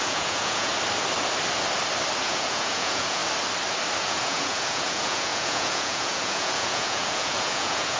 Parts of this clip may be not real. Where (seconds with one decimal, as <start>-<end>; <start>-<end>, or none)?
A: 0.0-0.7; 2.2-3.2; 4.0-8.0